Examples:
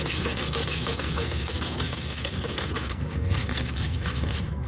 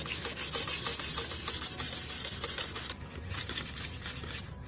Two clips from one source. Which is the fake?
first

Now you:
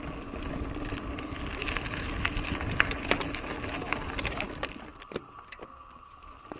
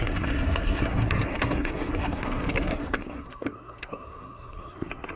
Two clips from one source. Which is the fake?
second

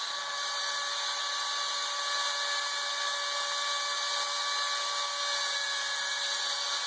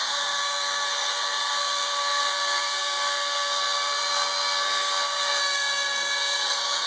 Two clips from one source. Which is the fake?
second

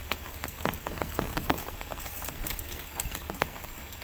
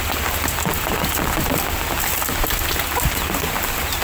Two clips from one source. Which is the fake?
first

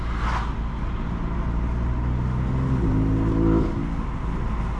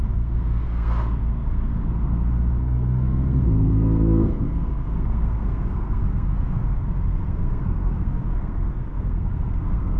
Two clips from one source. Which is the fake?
second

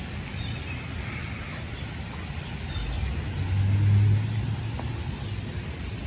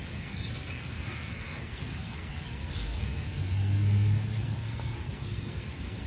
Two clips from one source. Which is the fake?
second